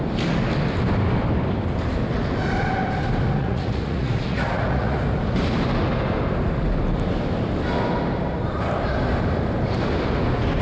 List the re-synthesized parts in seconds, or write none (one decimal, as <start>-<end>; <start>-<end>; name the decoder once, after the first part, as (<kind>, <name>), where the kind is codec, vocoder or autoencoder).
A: 3.4-5.0 (vocoder, Vocos)